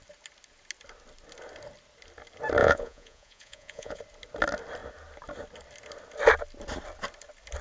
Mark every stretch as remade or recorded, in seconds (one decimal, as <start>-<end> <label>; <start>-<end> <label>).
0.0-2.6 recorded; 2.6-4.0 remade; 4.0-7.6 recorded